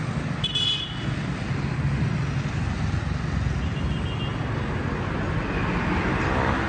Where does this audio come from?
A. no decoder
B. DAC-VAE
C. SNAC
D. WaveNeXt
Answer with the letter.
A